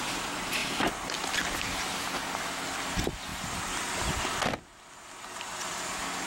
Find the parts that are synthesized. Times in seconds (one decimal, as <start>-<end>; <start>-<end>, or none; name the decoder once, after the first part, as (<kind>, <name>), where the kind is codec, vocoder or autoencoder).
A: 0.6-1.3 (vocoder, BigVGAN v2)